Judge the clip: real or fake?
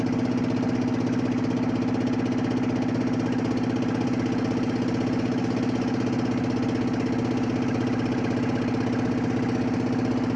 real